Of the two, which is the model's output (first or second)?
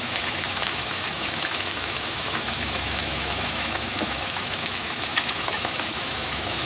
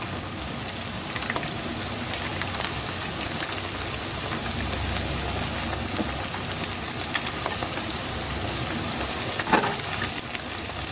first